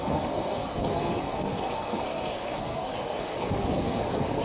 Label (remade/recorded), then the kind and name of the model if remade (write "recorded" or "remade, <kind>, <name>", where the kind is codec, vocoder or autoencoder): remade, codec, SNAC